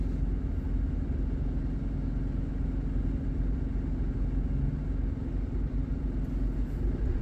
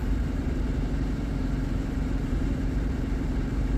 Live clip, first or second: first